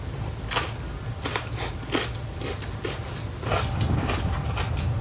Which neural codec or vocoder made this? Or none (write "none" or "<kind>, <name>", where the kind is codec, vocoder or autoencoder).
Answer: none